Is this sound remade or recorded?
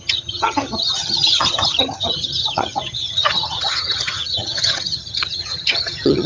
remade